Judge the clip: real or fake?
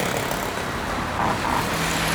real